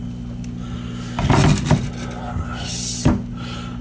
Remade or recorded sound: recorded